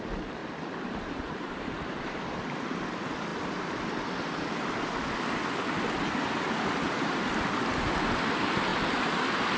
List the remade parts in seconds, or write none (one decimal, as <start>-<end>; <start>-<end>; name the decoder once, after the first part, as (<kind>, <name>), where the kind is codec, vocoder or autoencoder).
0.4-2.2 (vocoder, BigVGAN v2); 8.7-9.2

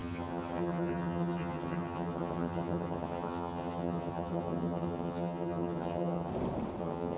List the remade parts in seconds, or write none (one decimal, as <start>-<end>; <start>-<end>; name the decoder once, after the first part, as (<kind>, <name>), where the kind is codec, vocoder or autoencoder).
0.0-6.3 (vocoder, HiFi-GAN); 6.8-7.2